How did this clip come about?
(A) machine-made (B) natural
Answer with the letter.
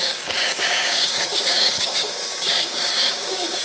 A